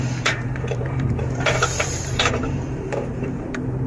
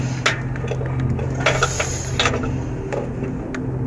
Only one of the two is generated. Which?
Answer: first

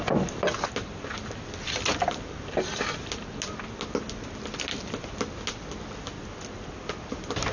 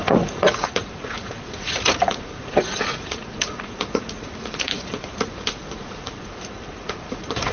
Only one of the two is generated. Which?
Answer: second